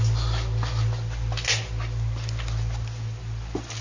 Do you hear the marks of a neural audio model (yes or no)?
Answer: no